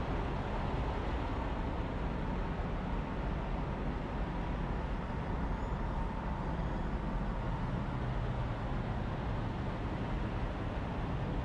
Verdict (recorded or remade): recorded